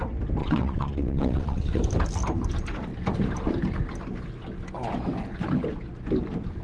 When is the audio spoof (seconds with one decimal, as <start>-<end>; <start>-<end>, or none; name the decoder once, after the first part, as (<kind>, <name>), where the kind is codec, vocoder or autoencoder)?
0.4-1.8 (vocoder, WaveNeXt)